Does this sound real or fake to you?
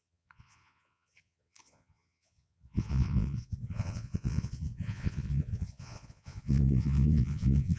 fake